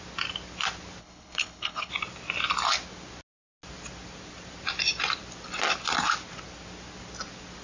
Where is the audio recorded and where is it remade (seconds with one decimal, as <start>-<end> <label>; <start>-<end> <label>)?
0.0-1.0 recorded; 1.0-1.9 remade; 1.9-7.6 recorded